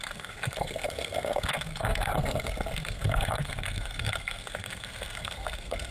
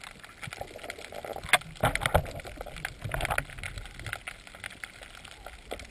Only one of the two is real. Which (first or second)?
second